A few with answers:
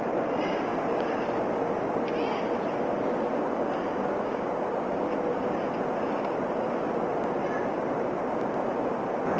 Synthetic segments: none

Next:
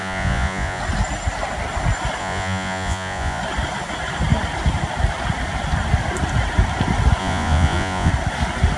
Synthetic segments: 0.0-0.8 (vocoder, Vocos); 2.2-3.4; 7.2-8.1

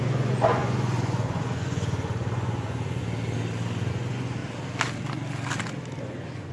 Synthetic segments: 0.0-3.0 (vocoder, Vocos); 3.9-4.4; 6.0-6.5

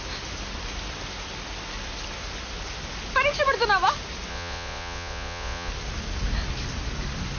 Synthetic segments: 4.3-5.7 (vocoder, Vocos)

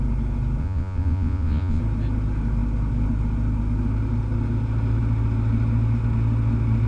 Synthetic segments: 0.6-1.8 (vocoder, Vocos)

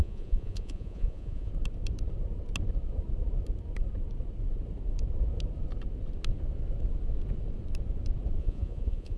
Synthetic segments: 0.0-1.5 (vocoder, Vocos); 8.4-9.2

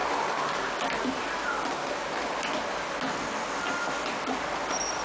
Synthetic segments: none